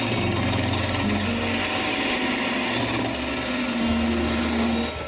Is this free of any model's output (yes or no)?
yes